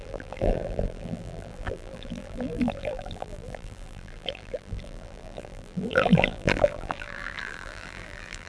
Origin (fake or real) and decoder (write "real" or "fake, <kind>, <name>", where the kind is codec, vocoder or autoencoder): fake, vocoder, BigVGAN v2